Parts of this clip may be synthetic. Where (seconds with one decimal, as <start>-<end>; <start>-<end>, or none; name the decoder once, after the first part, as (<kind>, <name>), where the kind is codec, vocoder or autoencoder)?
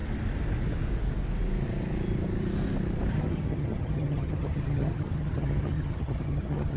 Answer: 3.1-6.8 (vocoder, HiFi-GAN)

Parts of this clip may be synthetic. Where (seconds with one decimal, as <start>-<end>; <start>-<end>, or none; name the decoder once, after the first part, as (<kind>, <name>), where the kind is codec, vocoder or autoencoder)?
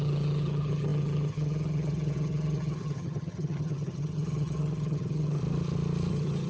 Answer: 0.0-5.4 (vocoder, HiFi-GAN); 6.1-6.5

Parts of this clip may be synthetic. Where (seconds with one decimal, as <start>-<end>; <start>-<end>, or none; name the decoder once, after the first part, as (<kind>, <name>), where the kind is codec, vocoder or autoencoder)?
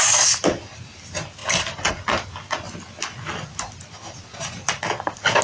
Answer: none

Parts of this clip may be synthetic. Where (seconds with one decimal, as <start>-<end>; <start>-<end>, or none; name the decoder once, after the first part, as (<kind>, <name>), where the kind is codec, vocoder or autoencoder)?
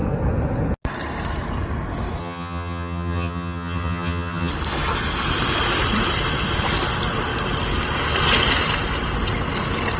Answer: 2.2-4.5 (vocoder, HiFi-GAN)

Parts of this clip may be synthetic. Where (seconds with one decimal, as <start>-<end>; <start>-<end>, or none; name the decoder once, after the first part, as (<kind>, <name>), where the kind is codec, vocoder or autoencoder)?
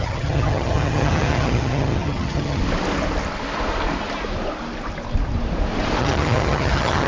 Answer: 0.0-2.6 (vocoder, HiFi-GAN); 6.0-7.1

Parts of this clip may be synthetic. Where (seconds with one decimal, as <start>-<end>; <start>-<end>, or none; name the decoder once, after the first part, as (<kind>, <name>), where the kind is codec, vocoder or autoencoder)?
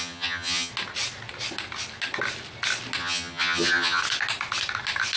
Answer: 0.0-0.7 (vocoder, HiFi-GAN); 3.0-4.0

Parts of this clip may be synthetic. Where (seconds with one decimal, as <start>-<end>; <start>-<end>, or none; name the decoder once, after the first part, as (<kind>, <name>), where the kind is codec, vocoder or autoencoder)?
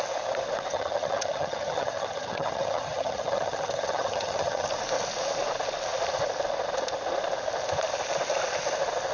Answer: 0.7-4.7 (vocoder, HiFi-GAN)